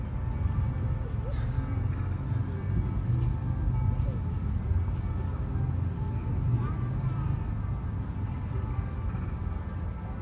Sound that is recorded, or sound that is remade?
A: recorded